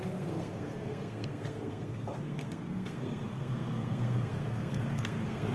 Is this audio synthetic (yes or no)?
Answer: yes